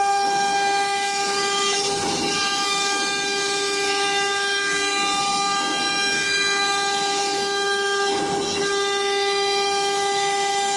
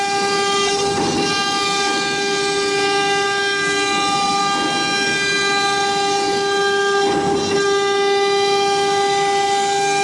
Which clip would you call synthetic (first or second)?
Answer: first